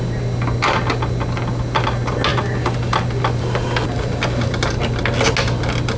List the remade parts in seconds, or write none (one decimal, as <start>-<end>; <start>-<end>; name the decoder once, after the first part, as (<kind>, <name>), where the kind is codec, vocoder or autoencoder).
none

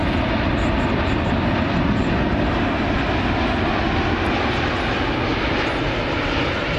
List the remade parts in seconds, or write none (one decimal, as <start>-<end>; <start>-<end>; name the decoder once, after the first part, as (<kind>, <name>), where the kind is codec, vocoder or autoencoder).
none

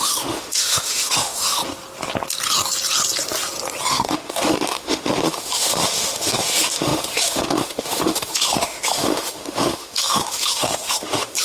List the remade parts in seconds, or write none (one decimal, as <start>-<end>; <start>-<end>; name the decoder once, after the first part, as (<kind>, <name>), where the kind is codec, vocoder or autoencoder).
0.0-1.6 (autoencoder, DAC-VAE); 3.9-11.4

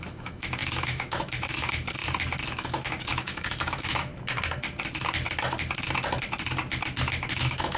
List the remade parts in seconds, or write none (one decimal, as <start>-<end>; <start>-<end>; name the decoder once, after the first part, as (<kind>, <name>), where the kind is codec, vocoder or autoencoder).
0.0-2.0 (autoencoder, DAC-VAE); 2.5-4.1; 7.3-7.8

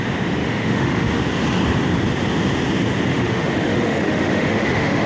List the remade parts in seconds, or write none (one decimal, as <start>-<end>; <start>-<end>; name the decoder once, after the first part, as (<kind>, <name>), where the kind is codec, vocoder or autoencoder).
0.4-1.2 (autoencoder, DAC-VAE); 3.1-5.1

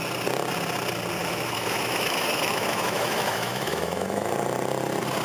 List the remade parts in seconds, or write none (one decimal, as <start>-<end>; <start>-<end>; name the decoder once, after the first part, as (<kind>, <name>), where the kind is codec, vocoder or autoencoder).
1.2-4.3 (autoencoder, DAC-VAE)

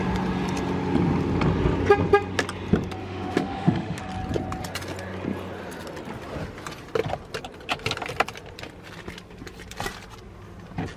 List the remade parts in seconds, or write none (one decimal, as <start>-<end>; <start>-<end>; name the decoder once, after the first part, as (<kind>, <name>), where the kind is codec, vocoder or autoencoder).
3.0-4.0 (autoencoder, DAC-VAE)